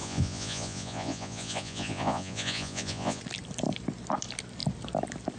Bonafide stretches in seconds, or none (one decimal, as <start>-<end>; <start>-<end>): 3.2-5.4